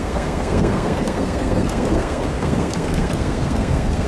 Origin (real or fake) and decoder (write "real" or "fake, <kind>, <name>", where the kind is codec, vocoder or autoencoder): fake, codec, SNAC